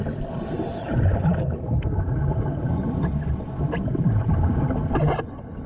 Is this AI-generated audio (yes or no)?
no